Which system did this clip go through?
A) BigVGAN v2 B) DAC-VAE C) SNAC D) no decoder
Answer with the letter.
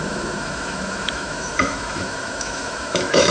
B